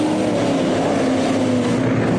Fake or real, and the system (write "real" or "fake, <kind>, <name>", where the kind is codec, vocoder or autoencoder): real